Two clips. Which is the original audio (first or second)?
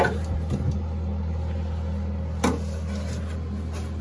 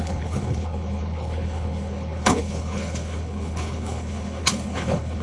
first